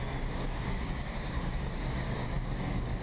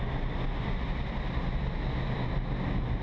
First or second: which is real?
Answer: second